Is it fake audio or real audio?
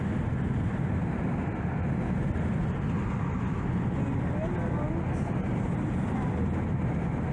real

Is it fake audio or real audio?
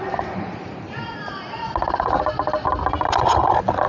real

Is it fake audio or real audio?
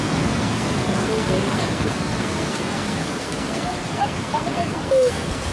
fake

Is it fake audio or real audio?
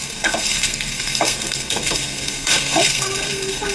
fake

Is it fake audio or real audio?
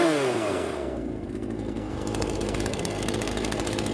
fake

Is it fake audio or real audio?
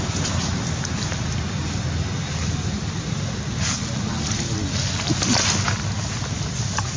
real